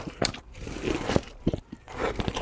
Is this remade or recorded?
remade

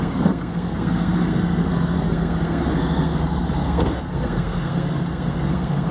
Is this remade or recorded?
remade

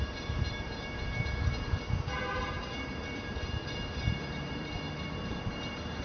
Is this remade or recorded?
remade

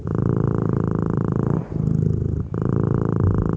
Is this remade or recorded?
recorded